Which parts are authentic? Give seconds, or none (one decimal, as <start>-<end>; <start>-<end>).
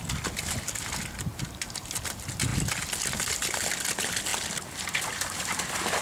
0.0-1.3; 2.0-6.0